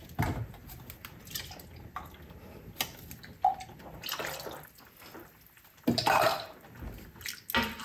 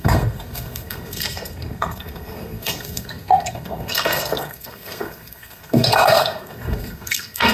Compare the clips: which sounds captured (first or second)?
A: first